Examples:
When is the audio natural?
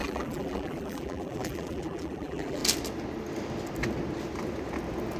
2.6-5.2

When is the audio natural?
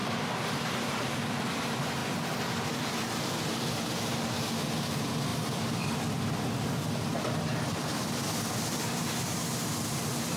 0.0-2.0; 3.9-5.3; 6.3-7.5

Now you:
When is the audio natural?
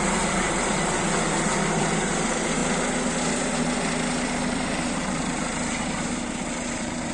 2.6-5.4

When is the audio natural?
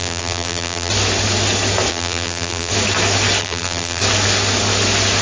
0.9-1.9; 2.7-3.4; 4.0-5.2